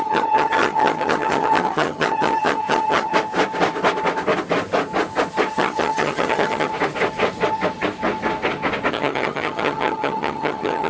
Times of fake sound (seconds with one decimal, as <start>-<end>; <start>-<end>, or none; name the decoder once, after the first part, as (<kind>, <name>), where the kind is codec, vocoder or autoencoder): 0.0-3.1 (vocoder, HiFi-GAN); 5.5-6.7; 8.9-10.9